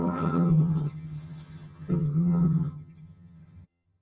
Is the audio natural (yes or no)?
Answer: no